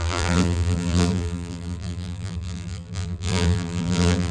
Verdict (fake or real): fake